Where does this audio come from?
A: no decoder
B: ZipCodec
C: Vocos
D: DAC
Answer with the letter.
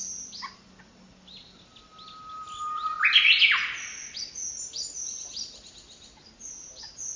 A